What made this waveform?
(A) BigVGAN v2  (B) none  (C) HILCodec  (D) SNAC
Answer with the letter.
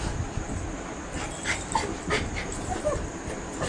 A